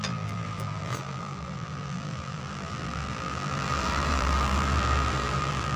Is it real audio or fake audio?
fake